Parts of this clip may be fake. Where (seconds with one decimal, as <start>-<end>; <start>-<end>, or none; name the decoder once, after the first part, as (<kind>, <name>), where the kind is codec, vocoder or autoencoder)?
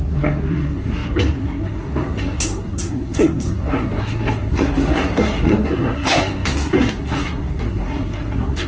0.0-8.7 (codec, SNAC)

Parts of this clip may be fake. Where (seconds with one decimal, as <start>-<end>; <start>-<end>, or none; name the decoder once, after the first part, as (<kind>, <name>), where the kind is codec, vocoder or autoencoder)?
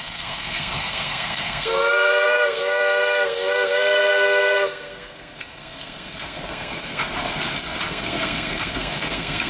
0.0-7.0 (codec, SNAC); 7.9-9.5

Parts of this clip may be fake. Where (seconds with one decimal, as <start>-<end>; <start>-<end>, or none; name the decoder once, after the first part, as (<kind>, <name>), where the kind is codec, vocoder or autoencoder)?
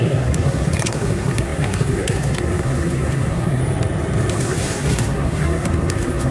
0.0-3.6 (codec, SNAC); 4.3-6.3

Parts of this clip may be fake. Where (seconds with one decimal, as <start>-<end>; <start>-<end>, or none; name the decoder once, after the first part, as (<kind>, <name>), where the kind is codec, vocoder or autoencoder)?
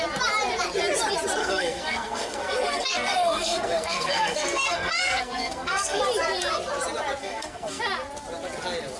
1.4-6.0 (codec, SNAC); 7.2-7.8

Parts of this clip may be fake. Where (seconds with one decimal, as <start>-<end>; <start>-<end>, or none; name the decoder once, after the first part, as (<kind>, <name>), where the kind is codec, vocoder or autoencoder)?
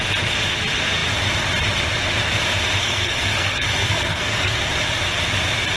2.8-4.7 (codec, SNAC)